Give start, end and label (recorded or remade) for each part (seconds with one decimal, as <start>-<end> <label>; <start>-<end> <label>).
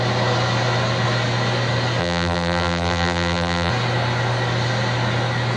0.0-2.0 recorded; 2.0-3.7 remade; 3.7-5.6 recorded